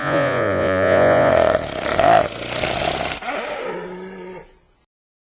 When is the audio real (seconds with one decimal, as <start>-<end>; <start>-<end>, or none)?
1.3-5.3